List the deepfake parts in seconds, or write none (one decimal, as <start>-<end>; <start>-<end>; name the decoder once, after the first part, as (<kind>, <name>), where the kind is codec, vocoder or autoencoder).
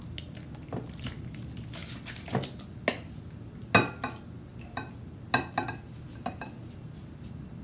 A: none